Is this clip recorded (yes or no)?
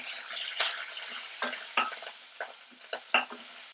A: yes